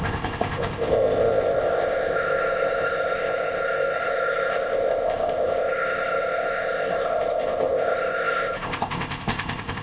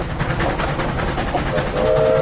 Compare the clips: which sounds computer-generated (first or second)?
first